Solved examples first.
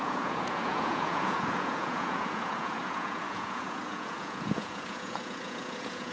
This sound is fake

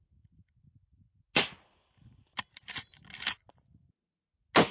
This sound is real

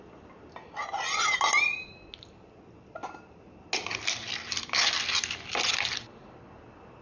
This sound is real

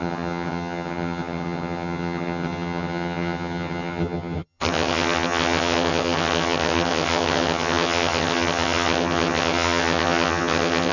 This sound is fake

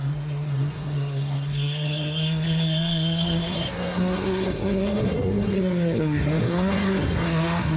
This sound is fake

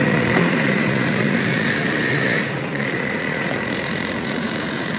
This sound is fake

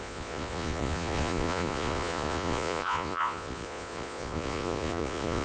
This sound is fake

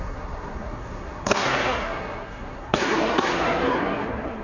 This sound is fake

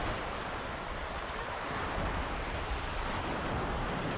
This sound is real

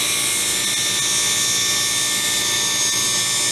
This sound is real